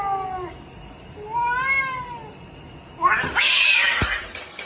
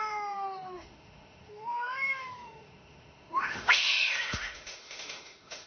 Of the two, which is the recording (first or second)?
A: first